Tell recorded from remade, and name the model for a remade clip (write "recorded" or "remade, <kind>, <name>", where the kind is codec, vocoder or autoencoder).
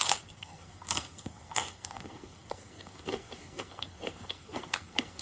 remade, codec, SNAC